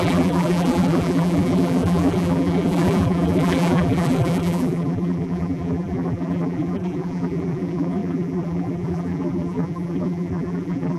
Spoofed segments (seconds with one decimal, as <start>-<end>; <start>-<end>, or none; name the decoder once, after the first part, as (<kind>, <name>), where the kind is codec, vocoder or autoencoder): 0.0-11.0 (vocoder, BigVGAN v2)